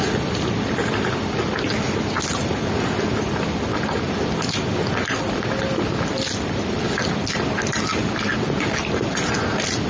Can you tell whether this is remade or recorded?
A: recorded